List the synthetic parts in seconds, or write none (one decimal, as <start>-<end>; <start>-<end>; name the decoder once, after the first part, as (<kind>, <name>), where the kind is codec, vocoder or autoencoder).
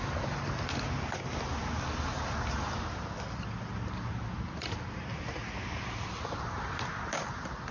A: none